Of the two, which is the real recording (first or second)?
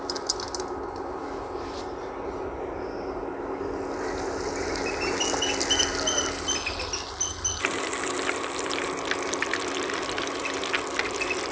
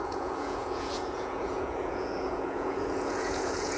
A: first